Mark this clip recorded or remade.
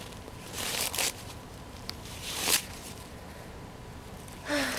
remade